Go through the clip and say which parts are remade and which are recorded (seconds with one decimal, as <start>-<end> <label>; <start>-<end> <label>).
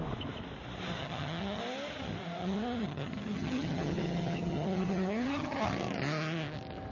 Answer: 0.0-1.0 recorded; 1.0-1.6 remade; 1.6-2.4 recorded; 2.4-5.6 remade; 5.6-6.9 recorded